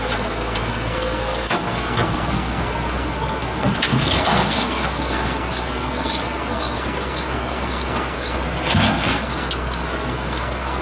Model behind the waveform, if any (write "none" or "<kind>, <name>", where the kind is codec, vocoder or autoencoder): codec, SNAC